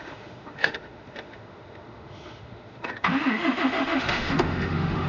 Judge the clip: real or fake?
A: fake